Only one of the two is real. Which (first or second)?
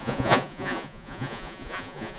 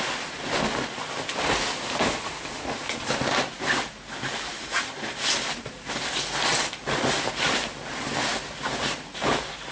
second